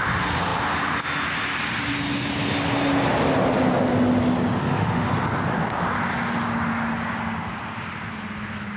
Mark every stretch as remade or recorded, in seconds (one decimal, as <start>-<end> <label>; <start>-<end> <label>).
0.0-4.6 recorded; 4.6-5.1 remade; 5.1-8.8 recorded